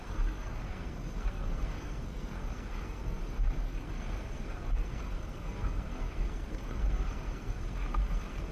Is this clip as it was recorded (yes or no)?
no